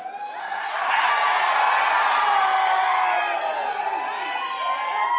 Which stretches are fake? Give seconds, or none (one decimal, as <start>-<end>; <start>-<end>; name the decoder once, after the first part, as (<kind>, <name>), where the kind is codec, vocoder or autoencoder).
0.4-1.1 (codec, SNAC)